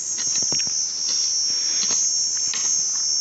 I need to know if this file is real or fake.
real